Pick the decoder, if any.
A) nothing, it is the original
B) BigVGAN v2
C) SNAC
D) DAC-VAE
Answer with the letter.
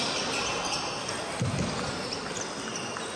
A